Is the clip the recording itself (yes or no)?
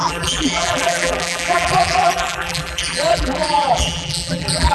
no